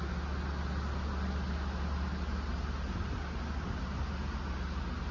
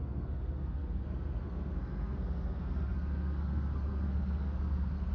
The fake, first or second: second